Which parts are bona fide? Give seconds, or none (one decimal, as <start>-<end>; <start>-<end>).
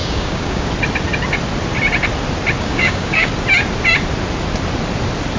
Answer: 0.7-2.6; 3.3-5.4